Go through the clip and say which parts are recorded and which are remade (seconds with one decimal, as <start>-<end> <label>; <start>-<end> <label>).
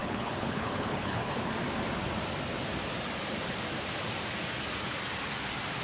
0.0-1.5 remade; 1.5-5.8 recorded